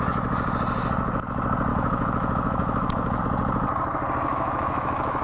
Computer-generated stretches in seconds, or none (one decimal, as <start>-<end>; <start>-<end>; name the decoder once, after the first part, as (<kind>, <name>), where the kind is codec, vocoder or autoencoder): 1.7-3.2 (autoencoder, DAC-VAE); 4.3-5.2